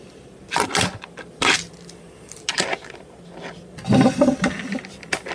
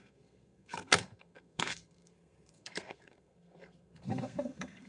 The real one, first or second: first